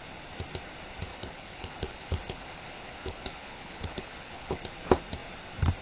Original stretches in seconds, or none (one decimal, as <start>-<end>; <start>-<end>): 0.0-1.1; 4.6-5.8